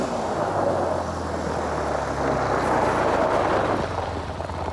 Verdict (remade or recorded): recorded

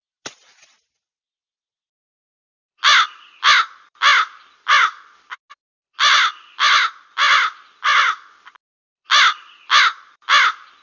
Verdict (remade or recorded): recorded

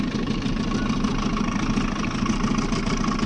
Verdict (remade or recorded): recorded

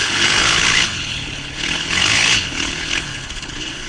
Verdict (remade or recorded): remade